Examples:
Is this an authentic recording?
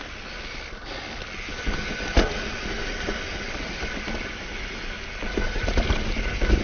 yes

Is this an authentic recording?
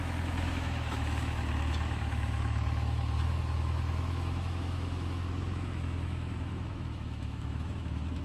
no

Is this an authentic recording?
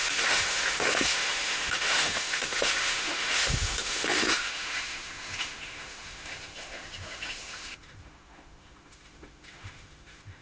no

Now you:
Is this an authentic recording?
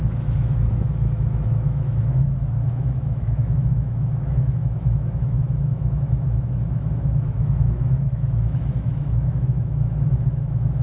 no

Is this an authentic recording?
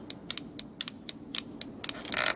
yes